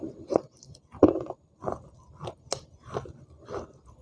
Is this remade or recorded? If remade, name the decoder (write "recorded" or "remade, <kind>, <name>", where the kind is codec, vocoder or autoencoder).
recorded